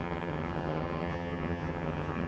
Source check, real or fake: fake